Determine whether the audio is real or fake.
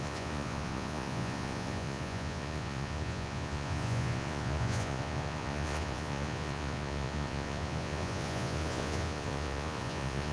fake